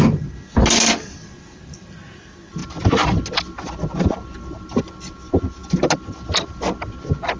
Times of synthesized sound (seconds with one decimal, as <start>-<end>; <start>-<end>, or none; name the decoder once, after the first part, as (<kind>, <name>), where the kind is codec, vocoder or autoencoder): none